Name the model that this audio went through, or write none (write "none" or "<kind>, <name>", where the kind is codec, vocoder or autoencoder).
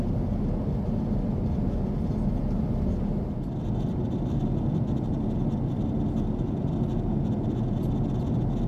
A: none